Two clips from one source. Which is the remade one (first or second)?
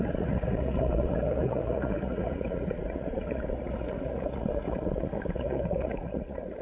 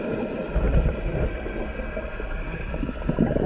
first